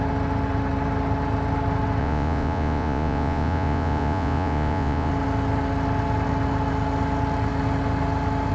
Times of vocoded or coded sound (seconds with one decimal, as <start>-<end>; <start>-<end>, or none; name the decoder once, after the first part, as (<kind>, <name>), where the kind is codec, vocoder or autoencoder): 2.0-5.1 (vocoder, Vocos)